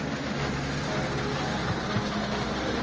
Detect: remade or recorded recorded